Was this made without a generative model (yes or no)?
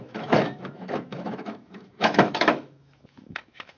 no